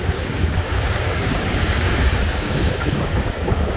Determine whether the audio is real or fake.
fake